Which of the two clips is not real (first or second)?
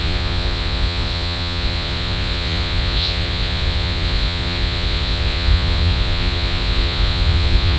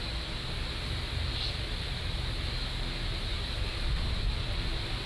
first